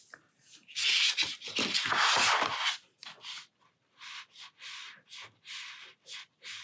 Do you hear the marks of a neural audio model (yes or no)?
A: no